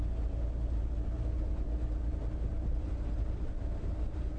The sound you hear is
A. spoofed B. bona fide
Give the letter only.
B